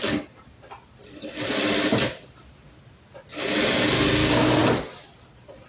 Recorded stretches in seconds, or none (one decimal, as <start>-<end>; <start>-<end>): 0.0-5.7